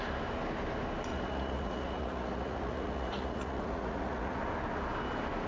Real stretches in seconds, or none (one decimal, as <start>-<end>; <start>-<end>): 0.0-1.1; 4.4-5.5